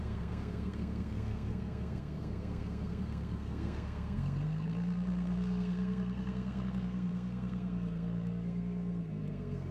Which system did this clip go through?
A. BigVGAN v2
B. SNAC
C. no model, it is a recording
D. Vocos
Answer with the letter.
B